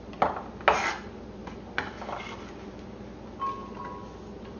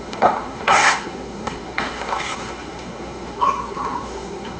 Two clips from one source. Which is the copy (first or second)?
second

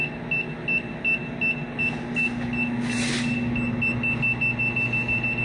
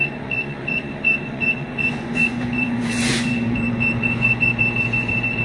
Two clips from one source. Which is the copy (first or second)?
second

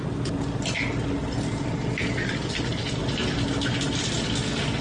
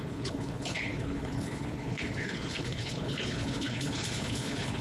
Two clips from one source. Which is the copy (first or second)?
second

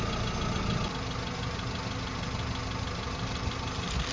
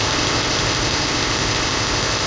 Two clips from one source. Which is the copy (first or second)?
second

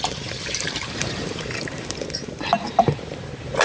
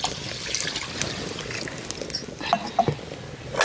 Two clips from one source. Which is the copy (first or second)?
first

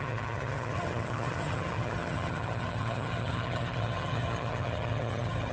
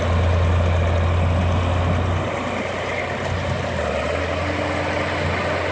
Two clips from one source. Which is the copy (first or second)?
first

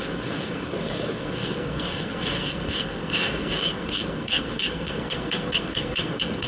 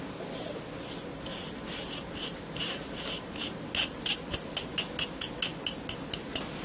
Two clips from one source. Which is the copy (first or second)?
first